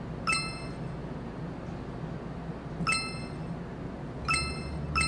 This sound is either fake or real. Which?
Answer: real